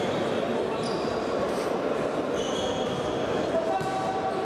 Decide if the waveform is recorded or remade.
recorded